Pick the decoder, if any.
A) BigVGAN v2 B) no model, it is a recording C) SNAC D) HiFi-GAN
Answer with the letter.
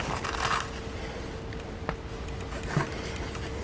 B